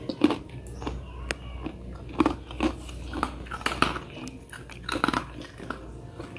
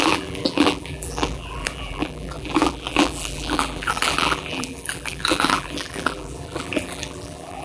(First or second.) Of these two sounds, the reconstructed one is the second